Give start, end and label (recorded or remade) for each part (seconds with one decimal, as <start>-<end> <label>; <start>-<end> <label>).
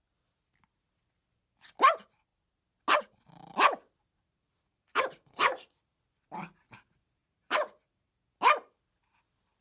0.0-4.2 recorded; 4.2-6.0 remade; 6.0-7.2 recorded; 7.2-8.1 remade; 8.1-9.6 recorded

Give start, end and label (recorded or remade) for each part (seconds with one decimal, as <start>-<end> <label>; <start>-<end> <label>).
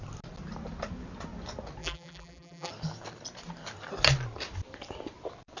0.0-1.8 recorded; 1.8-2.7 remade; 2.7-5.6 recorded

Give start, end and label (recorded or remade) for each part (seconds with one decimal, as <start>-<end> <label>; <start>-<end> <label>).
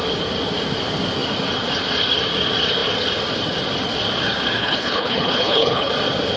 0.0-4.6 recorded; 4.6-5.9 remade; 5.9-6.4 recorded